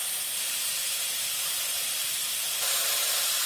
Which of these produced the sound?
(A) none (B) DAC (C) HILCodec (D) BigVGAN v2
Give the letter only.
D